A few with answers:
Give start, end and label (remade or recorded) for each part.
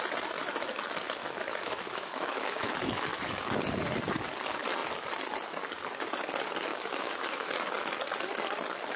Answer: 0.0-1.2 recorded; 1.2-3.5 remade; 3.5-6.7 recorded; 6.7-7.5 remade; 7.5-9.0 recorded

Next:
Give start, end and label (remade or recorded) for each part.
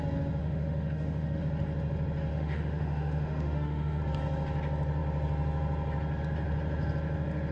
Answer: 0.0-0.4 recorded; 0.4-1.4 remade; 1.4-2.3 recorded; 2.3-4.0 remade; 4.0-7.5 recorded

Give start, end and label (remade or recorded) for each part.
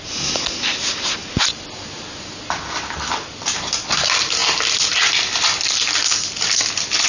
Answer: 0.0-7.1 recorded